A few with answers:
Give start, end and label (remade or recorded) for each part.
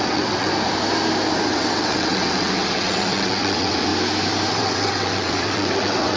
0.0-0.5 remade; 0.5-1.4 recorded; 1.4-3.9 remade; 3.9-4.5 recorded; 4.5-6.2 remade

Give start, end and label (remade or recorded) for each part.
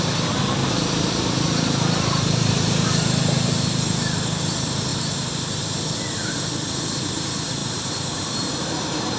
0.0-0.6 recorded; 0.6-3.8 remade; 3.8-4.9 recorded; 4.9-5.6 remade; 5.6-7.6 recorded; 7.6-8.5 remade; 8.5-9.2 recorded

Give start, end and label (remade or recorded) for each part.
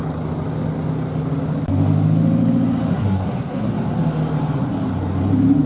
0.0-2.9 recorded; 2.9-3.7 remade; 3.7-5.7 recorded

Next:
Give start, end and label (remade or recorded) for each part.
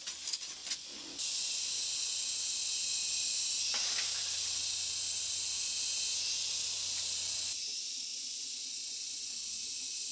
0.0-0.6 recorded; 0.6-1.8 remade; 1.8-8.1 recorded; 8.1-9.3 remade; 9.3-10.1 recorded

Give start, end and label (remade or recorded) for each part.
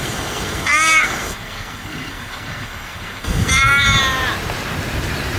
0.0-4.0 remade; 4.0-5.4 recorded